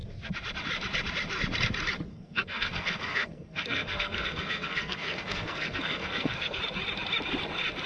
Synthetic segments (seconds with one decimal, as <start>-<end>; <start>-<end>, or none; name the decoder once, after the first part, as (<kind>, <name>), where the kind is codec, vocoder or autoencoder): 2.1-6.6 (codec, SNAC)